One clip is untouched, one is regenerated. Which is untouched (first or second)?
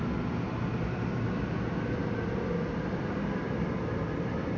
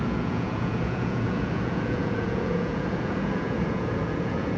first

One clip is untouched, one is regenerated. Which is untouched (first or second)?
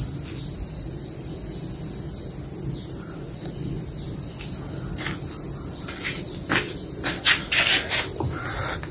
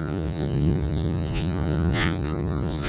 first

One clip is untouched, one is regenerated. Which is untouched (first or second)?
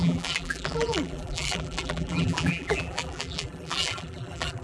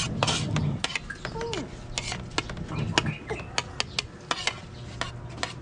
second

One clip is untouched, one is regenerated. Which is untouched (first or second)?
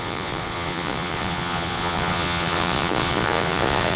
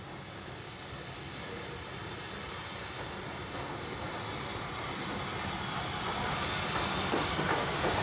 second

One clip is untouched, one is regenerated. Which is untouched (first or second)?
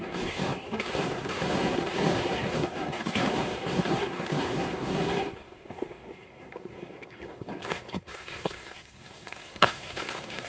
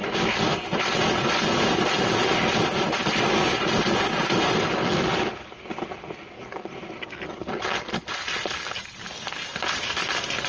second